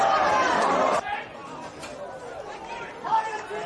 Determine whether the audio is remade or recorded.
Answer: recorded